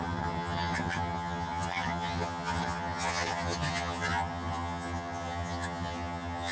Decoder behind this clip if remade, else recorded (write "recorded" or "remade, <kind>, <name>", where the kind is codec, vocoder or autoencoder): remade, vocoder, HiFi-GAN